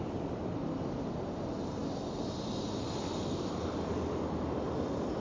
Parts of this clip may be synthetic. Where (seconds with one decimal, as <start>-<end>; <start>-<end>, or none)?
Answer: none